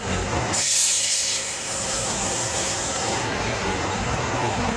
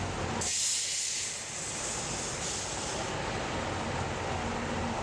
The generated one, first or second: first